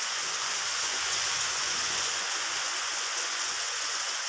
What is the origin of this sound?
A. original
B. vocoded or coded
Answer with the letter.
B